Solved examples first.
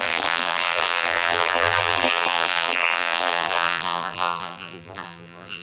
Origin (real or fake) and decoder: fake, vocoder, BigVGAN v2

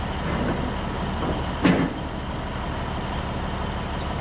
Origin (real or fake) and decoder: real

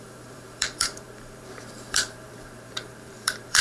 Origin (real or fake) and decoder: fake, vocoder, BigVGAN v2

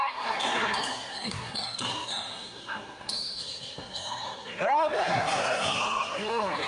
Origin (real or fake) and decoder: fake, codec, SNAC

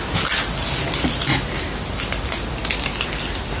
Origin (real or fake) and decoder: real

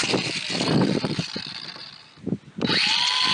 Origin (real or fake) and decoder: real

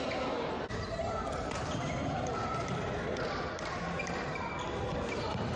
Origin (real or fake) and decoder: real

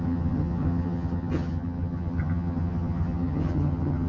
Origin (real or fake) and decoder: fake, vocoder, HiFi-GAN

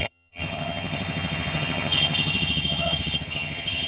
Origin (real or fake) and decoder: fake, vocoder, HiFi-GAN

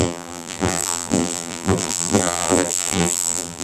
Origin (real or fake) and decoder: fake, vocoder, BigVGAN v2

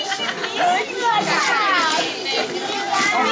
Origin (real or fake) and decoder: real